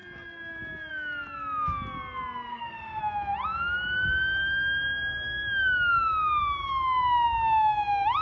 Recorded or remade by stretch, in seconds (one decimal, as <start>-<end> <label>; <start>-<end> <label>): 0.0-2.5 recorded; 2.5-3.0 remade; 3.0-8.2 recorded